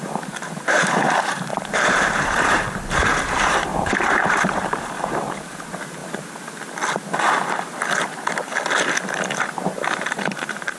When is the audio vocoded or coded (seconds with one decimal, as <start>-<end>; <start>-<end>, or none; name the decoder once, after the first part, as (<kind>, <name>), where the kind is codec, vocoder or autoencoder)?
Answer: 0.0-6.0 (vocoder, BigVGAN v2); 9.4-10.8